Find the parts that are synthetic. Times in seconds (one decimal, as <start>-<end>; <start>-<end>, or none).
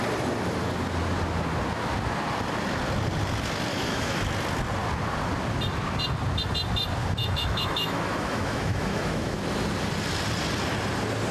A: 3.7-4.2; 7.0-9.4